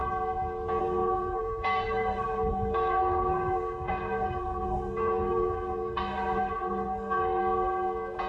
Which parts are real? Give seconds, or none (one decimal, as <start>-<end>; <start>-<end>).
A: 0.0-0.8; 7.4-8.3

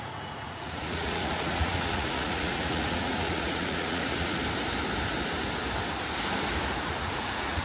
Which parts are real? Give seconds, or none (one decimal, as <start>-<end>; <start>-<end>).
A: 4.4-6.8

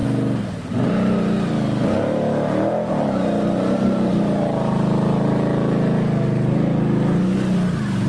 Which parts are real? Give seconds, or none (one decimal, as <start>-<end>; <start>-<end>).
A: 0.0-8.1

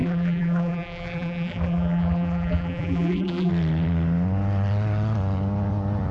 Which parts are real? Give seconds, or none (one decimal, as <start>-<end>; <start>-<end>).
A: 3.5-6.1

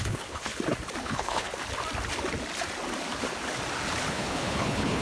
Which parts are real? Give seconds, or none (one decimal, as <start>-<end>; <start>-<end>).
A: 0.5-1.0; 1.5-4.1

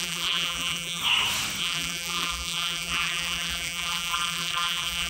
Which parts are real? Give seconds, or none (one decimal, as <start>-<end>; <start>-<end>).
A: 1.0-1.6

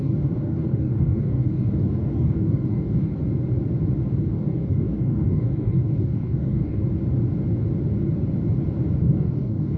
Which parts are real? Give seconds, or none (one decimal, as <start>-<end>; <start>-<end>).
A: 3.1-4.2; 6.8-9.0